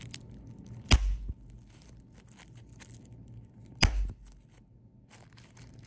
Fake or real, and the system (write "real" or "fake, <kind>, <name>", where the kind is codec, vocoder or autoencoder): real